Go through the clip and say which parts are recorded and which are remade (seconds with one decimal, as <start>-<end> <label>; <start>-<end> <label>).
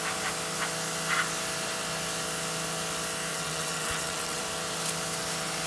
0.0-3.3 recorded; 3.3-4.4 remade; 4.4-5.7 recorded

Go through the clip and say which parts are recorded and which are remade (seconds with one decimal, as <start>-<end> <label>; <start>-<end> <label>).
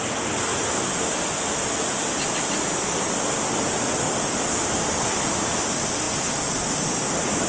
0.0-7.5 recorded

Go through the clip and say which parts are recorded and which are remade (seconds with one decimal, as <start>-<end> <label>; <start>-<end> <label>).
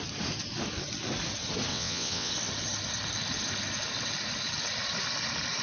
0.0-1.7 recorded; 1.7-2.3 remade; 2.3-5.6 recorded